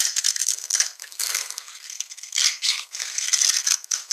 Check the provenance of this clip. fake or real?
fake